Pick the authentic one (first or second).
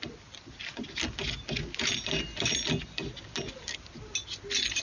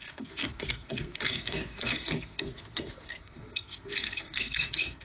first